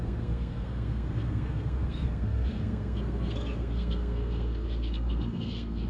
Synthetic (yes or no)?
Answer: yes